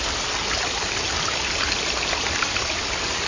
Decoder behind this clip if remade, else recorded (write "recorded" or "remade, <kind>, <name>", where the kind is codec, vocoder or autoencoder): recorded